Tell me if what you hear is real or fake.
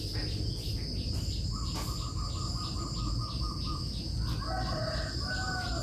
real